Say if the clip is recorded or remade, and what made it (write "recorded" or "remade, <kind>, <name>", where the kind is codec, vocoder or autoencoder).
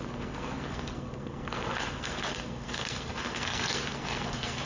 remade, codec, SNAC